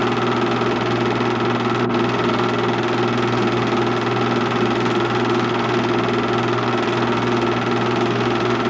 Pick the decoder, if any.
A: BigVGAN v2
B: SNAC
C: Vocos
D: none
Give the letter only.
D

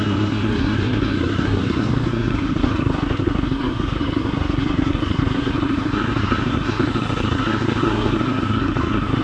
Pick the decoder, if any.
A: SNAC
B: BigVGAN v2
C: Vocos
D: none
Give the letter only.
A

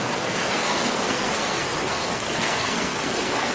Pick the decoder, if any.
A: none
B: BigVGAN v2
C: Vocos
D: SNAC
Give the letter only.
D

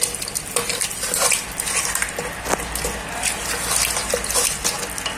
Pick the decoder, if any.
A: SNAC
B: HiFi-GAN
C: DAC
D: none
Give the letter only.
D